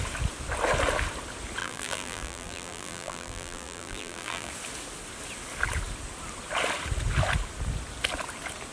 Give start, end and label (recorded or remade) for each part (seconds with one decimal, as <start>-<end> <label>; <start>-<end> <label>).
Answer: 0.0-1.6 recorded; 1.6-4.5 remade; 4.5-8.7 recorded